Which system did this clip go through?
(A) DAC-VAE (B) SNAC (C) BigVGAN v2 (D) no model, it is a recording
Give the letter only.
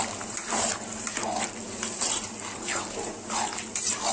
D